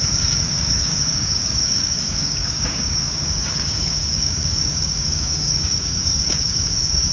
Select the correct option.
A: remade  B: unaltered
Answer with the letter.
A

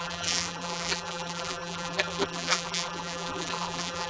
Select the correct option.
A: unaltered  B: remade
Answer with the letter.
B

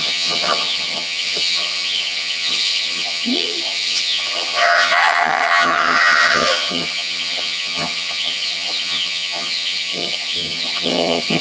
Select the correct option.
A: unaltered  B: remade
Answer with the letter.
B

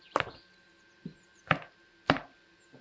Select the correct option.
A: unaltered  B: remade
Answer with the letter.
A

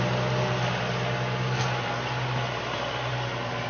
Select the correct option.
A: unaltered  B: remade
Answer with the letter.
A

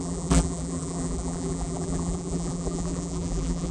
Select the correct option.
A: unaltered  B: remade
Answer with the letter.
B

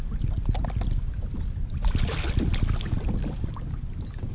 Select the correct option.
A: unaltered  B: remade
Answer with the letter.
A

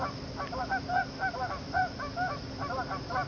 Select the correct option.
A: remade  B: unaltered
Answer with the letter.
B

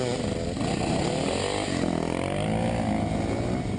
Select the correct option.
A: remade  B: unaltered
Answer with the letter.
B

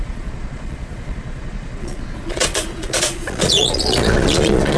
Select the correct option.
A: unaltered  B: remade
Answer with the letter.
B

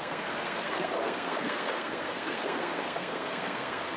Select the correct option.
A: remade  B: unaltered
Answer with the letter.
A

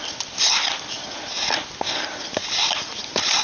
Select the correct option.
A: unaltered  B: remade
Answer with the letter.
A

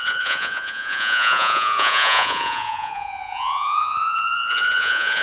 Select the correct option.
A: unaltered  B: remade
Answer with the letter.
B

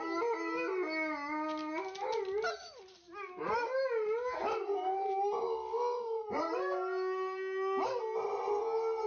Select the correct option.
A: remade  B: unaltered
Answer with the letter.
B